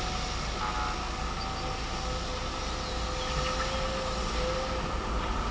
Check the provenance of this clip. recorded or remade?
recorded